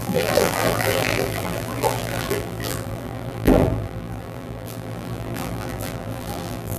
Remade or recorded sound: remade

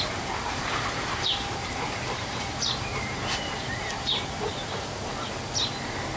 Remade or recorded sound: remade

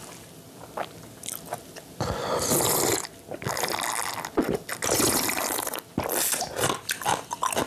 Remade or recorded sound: recorded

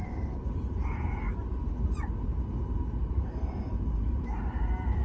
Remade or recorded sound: remade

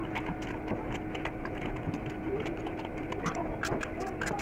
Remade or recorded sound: recorded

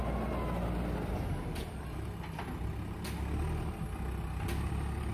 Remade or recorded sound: recorded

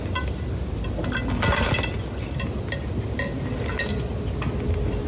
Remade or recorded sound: recorded